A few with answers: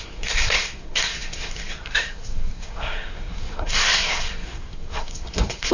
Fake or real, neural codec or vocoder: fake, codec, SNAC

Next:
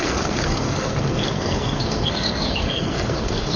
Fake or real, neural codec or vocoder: fake, codec, SNAC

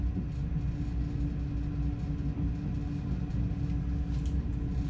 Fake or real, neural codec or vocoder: real